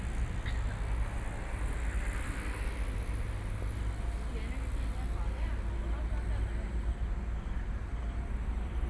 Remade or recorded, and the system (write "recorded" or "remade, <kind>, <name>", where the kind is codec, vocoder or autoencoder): recorded